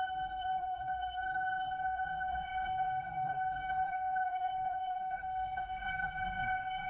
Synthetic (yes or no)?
yes